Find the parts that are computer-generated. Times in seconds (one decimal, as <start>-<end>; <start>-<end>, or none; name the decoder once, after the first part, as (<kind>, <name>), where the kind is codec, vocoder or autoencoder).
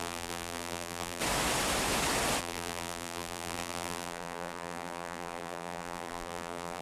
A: 0.0-1.2 (vocoder, BigVGAN v2); 2.4-6.8